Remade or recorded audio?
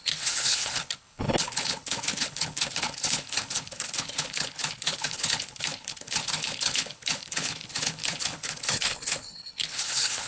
remade